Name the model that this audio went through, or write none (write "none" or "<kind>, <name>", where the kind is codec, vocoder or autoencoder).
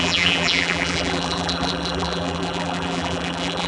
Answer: vocoder, BigVGAN v2